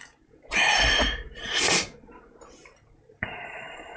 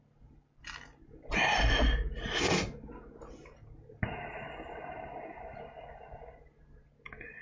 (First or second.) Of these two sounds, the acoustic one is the second